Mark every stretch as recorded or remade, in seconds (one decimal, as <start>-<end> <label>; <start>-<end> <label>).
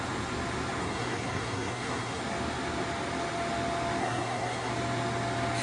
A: 0.0-0.8 recorded; 0.8-2.2 remade; 2.2-4.0 recorded; 4.0-4.7 remade; 4.7-5.6 recorded